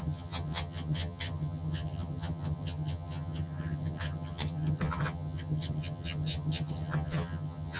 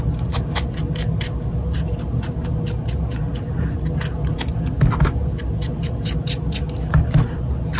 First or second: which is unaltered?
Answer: second